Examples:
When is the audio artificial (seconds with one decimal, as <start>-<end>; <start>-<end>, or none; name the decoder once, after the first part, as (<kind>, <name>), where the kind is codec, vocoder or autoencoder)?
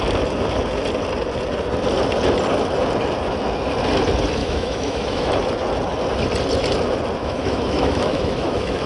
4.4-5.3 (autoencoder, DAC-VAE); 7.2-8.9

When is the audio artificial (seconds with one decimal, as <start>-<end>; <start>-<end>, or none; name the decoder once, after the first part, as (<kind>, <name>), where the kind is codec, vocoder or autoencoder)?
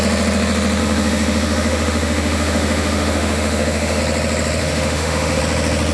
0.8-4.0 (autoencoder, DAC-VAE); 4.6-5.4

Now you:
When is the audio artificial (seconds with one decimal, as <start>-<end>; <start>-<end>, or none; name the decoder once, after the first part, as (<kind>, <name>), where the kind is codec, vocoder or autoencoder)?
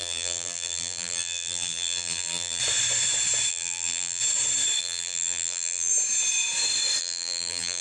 0.0-2.6 (vocoder, BigVGAN v2); 3.5-4.2; 4.8-5.9; 7.0-7.8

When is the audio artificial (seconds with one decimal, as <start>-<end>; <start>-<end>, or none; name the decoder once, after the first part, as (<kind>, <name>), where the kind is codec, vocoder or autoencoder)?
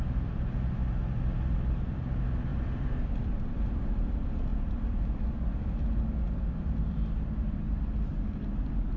0.0-8.1 (vocoder, BigVGAN v2)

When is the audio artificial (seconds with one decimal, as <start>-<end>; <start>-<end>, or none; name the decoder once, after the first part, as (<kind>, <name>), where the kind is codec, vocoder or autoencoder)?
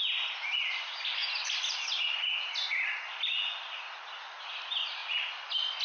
none